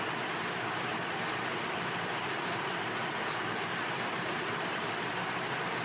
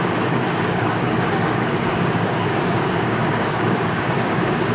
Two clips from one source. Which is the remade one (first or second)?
second